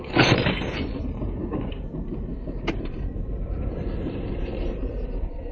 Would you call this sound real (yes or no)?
no